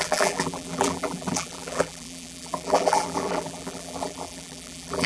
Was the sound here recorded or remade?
remade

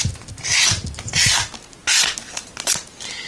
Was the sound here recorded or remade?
recorded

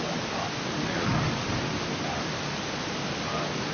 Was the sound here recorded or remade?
recorded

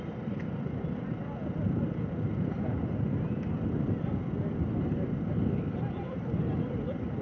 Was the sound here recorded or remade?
remade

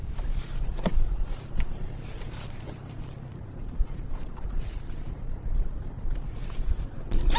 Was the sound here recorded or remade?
remade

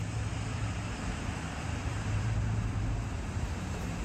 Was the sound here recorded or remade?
remade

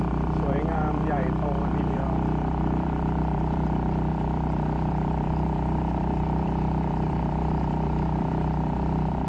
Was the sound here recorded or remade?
remade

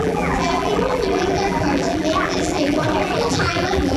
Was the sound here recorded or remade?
remade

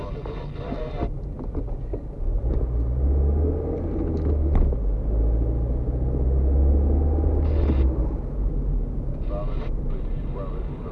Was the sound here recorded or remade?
recorded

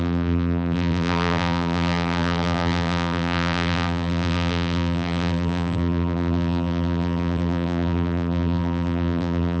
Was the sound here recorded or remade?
remade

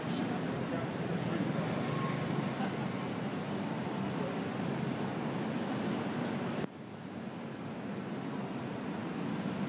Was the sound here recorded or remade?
recorded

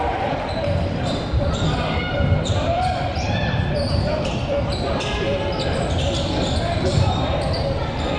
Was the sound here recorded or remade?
remade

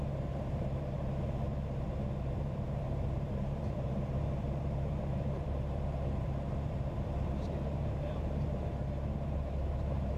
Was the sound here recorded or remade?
remade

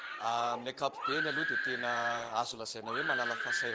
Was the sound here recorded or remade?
remade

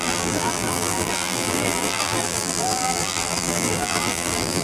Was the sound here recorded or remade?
remade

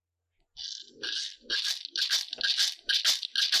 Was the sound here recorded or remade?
recorded